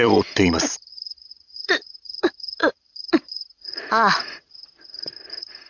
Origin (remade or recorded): remade